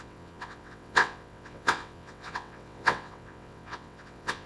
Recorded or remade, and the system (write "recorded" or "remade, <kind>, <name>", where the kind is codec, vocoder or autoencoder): remade, vocoder, WaveNeXt